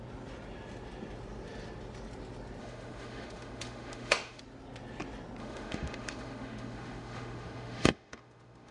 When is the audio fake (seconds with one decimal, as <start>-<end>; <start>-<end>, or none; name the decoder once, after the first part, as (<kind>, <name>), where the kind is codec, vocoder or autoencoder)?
2.6-4.4 (autoencoder, DAC-VAE); 5.4-8.7